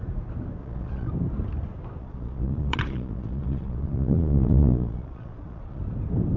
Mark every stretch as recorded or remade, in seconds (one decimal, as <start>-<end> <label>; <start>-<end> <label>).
0.0-0.6 recorded; 0.6-1.1 remade; 1.1-2.0 recorded; 2.0-5.8 remade; 5.8-6.4 recorded